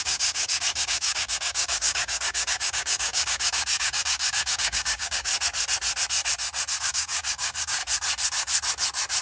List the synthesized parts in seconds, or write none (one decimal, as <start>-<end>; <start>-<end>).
0.0-5.3; 6.8-7.8